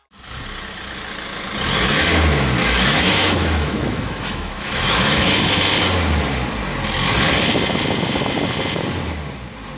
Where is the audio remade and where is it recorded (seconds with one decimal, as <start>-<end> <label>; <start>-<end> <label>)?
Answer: 0.0-2.6 recorded; 2.6-5.4 remade; 5.4-9.8 recorded